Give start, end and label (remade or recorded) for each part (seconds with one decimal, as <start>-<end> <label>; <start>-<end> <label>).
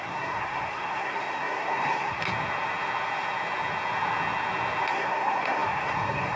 0.0-2.2 remade; 2.2-4.9 recorded; 4.9-6.4 remade